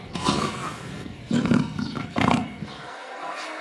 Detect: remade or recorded remade